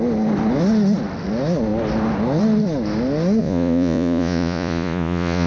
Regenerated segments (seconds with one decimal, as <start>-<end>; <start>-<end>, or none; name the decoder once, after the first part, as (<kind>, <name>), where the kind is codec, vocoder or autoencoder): 3.4-5.5 (vocoder, Vocos)